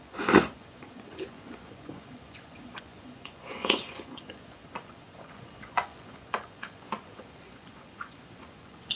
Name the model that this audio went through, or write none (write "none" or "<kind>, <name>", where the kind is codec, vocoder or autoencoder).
vocoder, Vocos